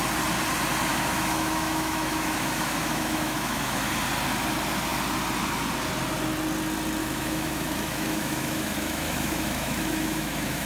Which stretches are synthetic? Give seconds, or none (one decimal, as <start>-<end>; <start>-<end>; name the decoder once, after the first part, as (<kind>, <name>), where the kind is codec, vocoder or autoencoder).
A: 0.9-3.9 (autoencoder, DAC-VAE); 7.0-10.7